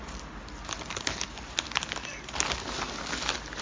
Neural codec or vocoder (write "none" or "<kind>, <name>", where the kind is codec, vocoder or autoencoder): none